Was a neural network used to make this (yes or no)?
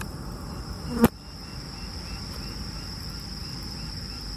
no